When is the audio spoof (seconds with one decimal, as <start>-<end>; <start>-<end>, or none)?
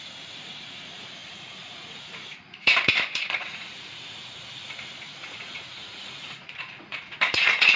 0.0-4.2; 5.0-7.8